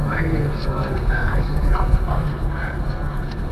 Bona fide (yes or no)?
no